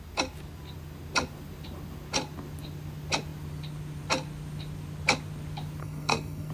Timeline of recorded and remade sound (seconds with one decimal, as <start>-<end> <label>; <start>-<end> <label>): 0.0-5.8 recorded; 5.8-6.5 remade